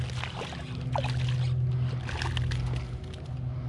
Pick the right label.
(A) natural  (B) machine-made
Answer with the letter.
A